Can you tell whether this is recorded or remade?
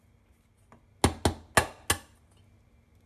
recorded